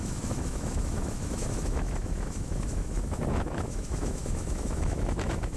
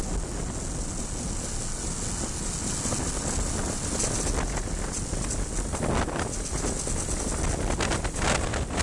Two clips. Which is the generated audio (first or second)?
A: first